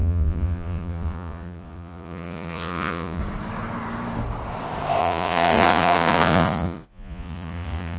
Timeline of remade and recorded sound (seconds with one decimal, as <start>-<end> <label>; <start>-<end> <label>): 0.0-3.2 remade; 3.2-5.0 recorded; 5.0-8.0 remade

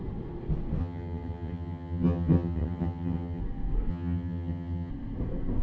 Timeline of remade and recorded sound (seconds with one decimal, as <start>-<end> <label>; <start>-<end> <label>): 0.0-0.8 recorded; 0.8-3.4 remade; 3.4-3.9 recorded; 3.9-4.9 remade; 4.9-5.6 recorded

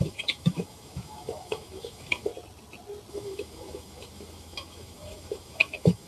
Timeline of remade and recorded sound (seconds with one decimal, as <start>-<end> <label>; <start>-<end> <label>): 0.0-2.3 remade; 2.3-3.1 recorded; 3.1-6.1 remade

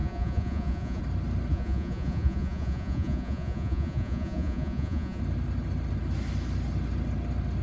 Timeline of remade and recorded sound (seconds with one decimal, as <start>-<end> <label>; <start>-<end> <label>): 0.0-1.0 remade; 1.0-1.5 recorded; 1.5-5.2 remade; 5.2-7.6 recorded

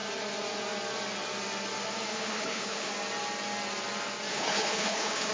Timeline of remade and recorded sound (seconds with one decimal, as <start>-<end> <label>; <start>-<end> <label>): 0.0-2.1 recorded; 2.1-2.9 remade; 2.9-4.3 recorded; 4.3-5.3 remade

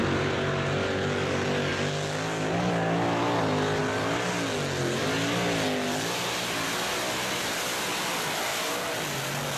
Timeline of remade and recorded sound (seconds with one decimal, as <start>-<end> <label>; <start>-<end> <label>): 0.0-9.6 recorded